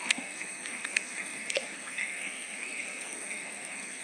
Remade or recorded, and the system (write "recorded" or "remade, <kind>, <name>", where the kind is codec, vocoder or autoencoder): remade, codec, SNAC